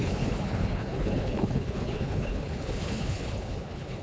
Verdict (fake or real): fake